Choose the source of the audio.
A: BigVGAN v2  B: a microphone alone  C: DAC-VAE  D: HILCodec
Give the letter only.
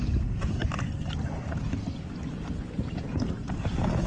B